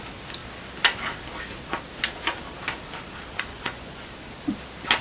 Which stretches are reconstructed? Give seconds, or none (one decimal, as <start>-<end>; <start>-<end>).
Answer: 3.5-4.1